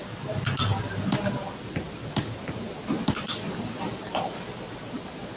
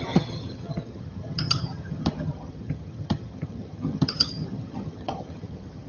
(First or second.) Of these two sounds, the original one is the first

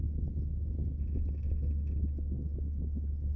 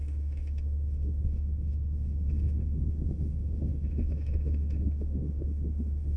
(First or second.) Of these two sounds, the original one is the first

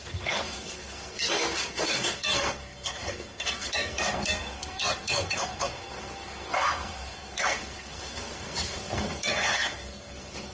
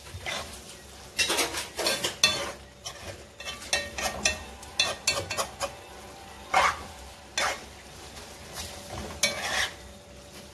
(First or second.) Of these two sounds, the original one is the second